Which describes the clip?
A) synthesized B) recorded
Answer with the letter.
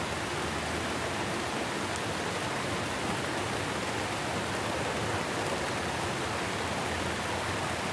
B